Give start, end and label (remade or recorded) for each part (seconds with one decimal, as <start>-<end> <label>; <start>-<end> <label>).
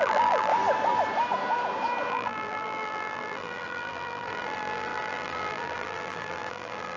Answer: 0.0-0.5 remade; 0.5-2.1 recorded; 2.1-7.0 remade